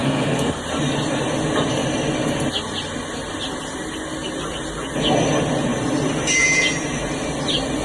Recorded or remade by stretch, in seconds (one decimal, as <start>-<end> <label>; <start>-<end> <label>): 0.0-0.6 remade; 0.6-7.8 recorded

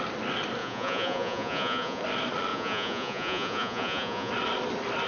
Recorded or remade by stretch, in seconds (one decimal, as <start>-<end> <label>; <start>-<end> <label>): 0.0-0.6 recorded; 0.6-2.0 remade; 2.0-2.5 recorded; 2.5-4.3 remade; 4.3-5.1 recorded

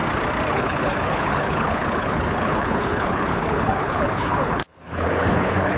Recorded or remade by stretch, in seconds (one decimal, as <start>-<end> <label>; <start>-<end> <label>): 0.0-0.5 recorded; 0.5-5.8 remade

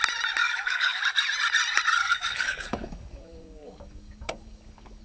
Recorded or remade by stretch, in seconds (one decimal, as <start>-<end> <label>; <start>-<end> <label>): 0.0-0.4 recorded; 0.4-1.0 remade; 1.0-2.0 recorded; 2.0-5.0 remade

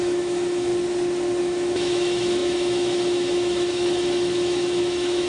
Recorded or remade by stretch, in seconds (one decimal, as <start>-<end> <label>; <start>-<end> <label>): 0.0-0.7 remade; 0.7-1.4 recorded; 1.4-5.3 remade

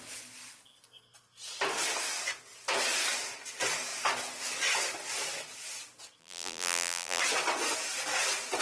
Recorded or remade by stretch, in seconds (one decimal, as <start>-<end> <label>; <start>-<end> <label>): 0.0-6.2 recorded; 6.2-7.2 remade; 7.2-8.6 recorded